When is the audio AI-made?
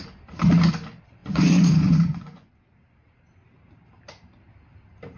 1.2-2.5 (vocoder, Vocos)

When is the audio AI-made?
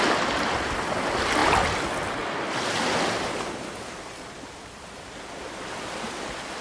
none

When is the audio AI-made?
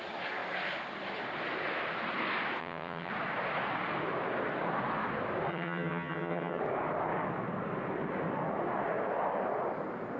2.6-3.1 (vocoder, HiFi-GAN); 5.5-6.6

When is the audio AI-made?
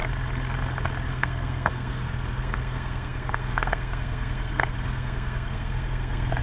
1.1-6.4 (codec, SNAC)